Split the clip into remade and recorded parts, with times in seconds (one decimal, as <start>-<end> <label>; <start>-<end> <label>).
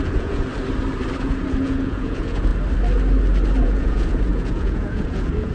0.0-0.5 remade; 0.5-1.2 recorded; 1.2-2.5 remade; 2.5-3.6 recorded; 3.6-5.5 remade